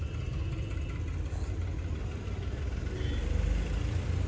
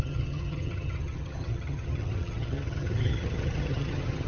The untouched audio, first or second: first